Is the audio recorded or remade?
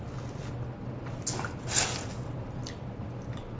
recorded